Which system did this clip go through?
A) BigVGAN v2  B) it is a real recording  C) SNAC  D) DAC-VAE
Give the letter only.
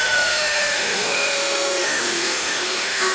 D